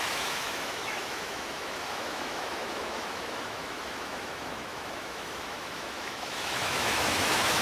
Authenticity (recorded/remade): remade